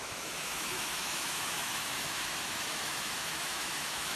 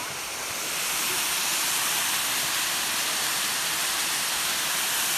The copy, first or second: first